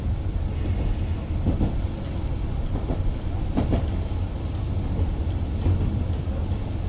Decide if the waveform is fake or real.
real